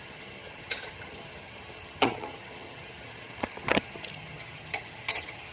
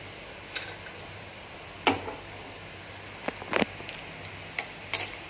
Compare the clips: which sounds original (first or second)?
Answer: second